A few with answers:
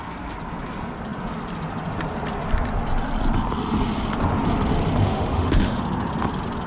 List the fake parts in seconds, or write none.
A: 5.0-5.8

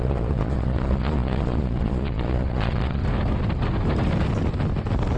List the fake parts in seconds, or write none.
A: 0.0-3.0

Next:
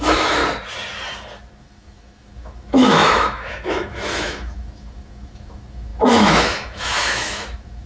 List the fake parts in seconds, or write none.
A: 0.0-0.4; 1.6-7.9

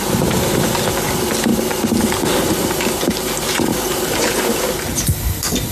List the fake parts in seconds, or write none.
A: none

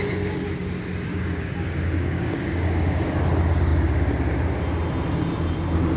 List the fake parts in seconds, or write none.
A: 1.1-3.1

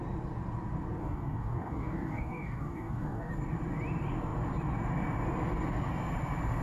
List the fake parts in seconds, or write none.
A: 1.0-3.3

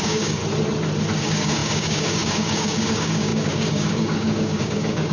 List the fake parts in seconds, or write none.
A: 0.0-0.4; 1.2-5.1

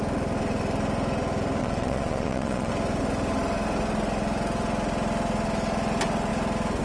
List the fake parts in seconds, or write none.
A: 1.6-2.7